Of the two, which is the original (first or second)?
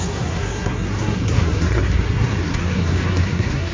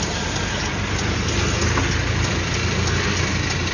second